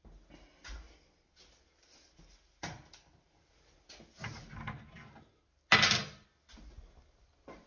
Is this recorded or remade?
recorded